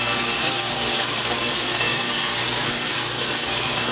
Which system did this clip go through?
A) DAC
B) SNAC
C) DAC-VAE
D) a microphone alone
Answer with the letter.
B